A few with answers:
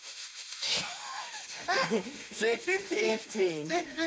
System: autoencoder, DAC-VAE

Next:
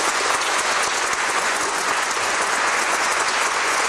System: vocoder, Vocos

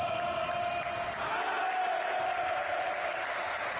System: none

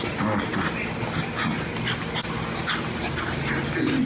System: none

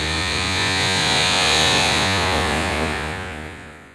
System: vocoder, Vocos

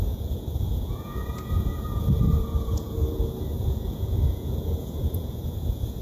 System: vocoder, Vocos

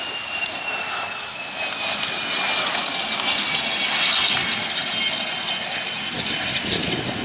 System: none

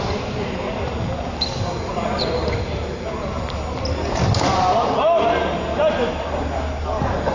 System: none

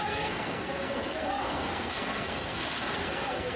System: codec, SNAC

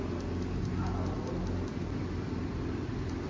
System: none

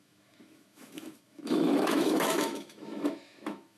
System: autoencoder, DAC-VAE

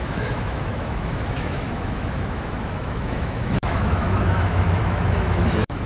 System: autoencoder, DAC-VAE